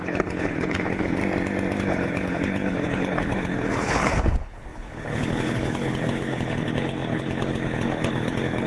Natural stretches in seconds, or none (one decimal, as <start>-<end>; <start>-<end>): 1.2-1.8

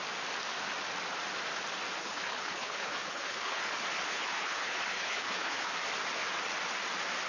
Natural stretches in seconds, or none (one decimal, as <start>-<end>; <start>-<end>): 0.0-2.0; 3.6-4.1; 5.7-7.3

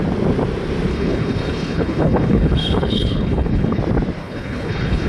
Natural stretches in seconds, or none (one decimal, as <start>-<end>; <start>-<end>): 0.0-0.9; 3.8-4.2

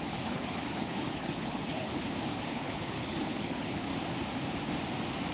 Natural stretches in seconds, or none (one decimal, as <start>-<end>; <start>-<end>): 1.9-2.4; 3.9-5.3

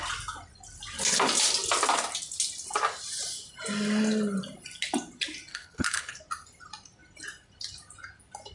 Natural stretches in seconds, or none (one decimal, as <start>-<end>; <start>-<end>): 0.0-5.5; 6.2-8.5

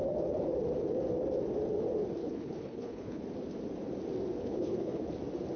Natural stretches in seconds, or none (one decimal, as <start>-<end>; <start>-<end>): 0.0-2.2; 3.2-4.4; 5.1-5.6

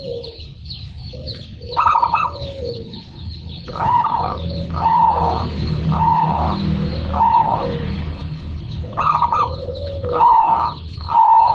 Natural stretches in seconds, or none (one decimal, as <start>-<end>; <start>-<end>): 6.4-7.2